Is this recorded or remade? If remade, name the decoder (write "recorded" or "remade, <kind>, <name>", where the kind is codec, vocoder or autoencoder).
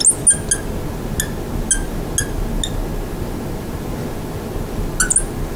recorded